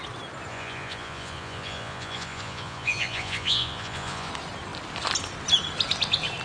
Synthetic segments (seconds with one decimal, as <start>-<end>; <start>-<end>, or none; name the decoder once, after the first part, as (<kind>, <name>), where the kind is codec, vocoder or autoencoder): 0.5-4.3 (vocoder, Vocos)